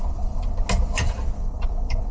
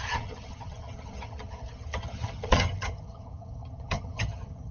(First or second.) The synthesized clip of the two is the second